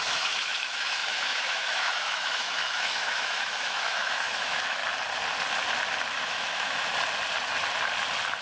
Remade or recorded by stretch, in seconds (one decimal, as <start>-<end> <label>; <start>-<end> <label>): 0.0-4.8 remade; 4.8-6.2 recorded; 6.2-6.9 remade; 6.9-8.4 recorded